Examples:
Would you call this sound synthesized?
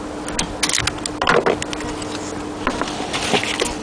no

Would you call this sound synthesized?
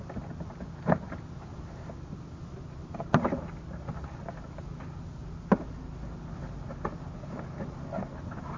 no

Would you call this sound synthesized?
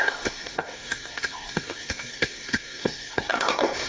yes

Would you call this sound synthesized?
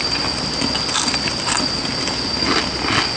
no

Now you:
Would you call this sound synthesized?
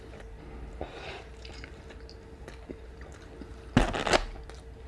no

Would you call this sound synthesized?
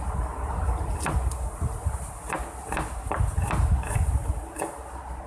no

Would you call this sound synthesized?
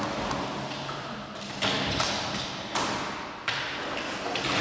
no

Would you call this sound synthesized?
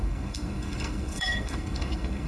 yes